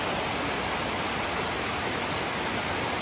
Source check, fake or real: real